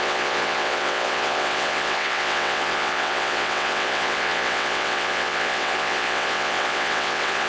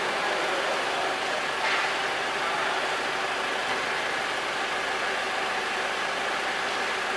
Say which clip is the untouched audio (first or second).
second